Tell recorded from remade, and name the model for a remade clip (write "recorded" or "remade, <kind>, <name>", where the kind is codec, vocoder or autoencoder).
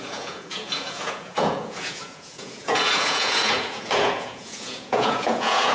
remade, vocoder, Vocos